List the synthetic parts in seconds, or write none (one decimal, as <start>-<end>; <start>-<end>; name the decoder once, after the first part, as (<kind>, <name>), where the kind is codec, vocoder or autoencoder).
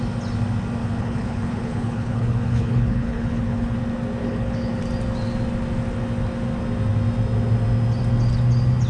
0.8-3.8 (codec, HILCodec); 4.2-4.8